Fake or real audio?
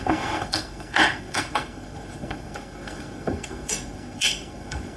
fake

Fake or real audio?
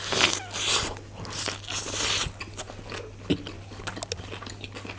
real